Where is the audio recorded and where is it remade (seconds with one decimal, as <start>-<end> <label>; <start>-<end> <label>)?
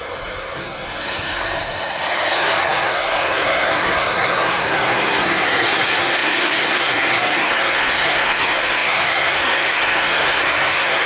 0.0-11.1 remade